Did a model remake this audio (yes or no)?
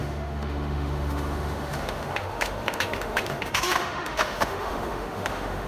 yes